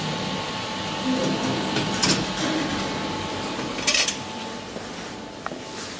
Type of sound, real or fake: real